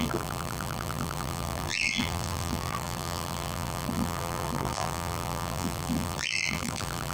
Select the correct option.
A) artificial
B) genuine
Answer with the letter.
A